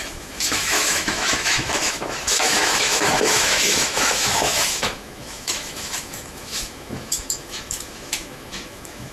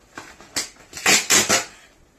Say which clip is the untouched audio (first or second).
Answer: second